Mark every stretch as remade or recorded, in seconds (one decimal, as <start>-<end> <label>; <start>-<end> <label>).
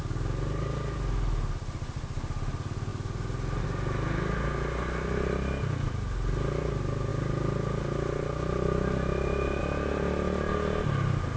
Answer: 0.0-11.4 recorded